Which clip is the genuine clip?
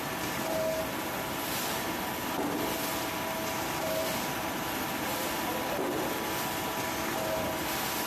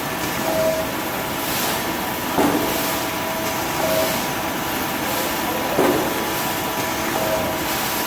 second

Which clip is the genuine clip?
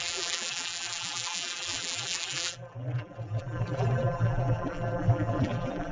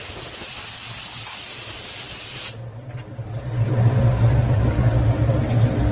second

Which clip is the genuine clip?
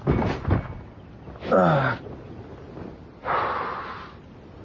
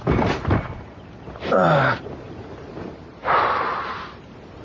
first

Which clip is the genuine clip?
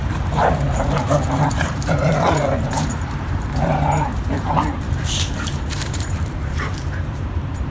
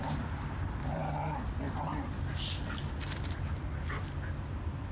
second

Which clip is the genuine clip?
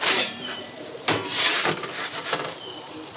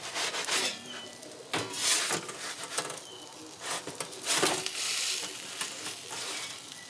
second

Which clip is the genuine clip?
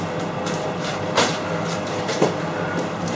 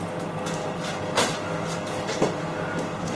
second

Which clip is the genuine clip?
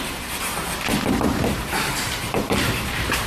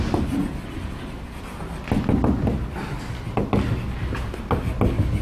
second